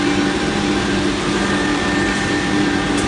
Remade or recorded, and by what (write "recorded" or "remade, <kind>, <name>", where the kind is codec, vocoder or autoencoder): remade, vocoder, BigVGAN v2